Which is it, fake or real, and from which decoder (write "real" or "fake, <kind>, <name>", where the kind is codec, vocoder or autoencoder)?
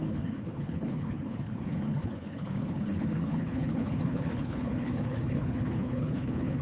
fake, codec, HILCodec